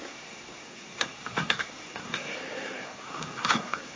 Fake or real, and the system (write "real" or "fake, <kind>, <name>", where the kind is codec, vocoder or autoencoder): fake, codec, SNAC